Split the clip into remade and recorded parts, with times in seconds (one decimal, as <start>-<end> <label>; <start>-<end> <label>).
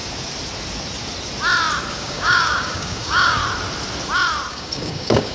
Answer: 0.0-1.9 recorded; 1.9-3.4 remade; 3.4-4.5 recorded; 4.5-5.3 remade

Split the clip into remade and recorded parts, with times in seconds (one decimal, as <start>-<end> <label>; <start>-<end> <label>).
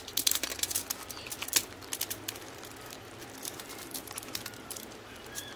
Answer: 0.0-0.5 remade; 0.5-3.4 recorded; 3.4-5.6 remade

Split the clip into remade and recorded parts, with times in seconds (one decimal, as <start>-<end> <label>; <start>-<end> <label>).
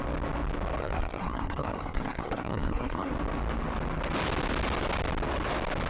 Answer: 0.0-0.8 recorded; 0.8-3.1 remade; 3.1-5.9 recorded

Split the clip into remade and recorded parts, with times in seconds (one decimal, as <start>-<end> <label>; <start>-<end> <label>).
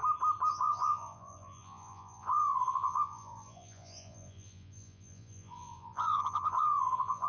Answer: 0.0-0.5 recorded; 0.5-7.3 remade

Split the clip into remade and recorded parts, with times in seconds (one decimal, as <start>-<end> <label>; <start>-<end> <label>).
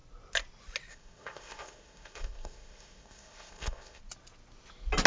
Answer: 0.0-0.9 recorded; 0.9-4.0 remade; 4.0-5.1 recorded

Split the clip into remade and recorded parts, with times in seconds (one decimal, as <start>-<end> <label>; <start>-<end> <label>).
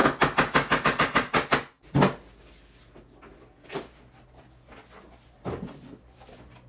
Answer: 0.0-6.7 recorded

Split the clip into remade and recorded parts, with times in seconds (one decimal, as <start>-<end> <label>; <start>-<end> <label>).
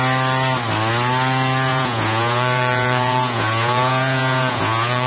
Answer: 0.0-1.7 recorded; 1.7-5.1 remade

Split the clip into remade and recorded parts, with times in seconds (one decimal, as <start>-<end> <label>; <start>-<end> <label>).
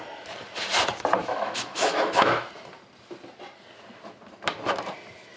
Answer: 0.0-1.2 recorded; 1.2-2.5 remade; 2.5-5.4 recorded